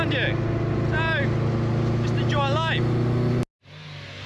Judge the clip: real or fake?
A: real